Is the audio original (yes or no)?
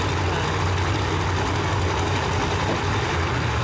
yes